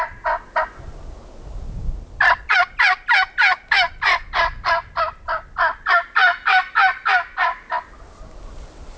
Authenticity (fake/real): real